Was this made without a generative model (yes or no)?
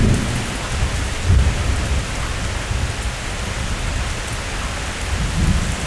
yes